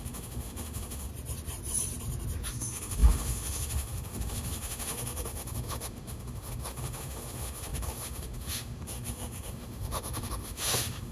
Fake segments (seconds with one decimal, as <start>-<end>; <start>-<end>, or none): 0.0-1.1; 2.5-11.1